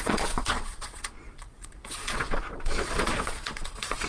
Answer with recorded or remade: remade